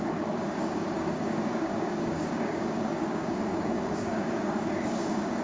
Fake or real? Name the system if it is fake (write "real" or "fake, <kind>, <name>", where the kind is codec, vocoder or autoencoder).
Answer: fake, codec, DAC